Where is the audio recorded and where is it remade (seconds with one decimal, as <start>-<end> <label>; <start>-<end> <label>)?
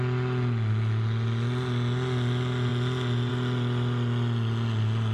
0.0-5.1 recorded